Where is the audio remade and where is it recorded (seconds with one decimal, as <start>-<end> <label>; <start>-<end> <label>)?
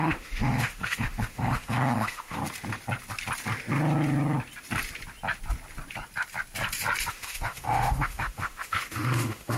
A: 0.0-2.4 remade; 2.4-7.1 recorded; 7.1-9.6 remade